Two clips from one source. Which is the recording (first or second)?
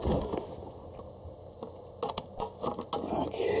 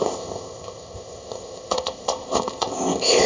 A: first